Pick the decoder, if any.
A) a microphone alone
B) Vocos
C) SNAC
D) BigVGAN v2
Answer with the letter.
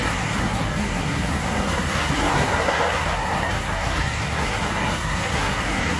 C